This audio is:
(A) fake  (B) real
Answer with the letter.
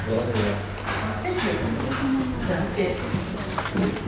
B